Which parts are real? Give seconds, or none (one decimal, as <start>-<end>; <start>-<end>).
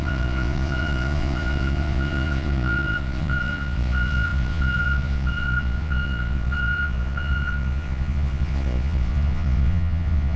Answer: none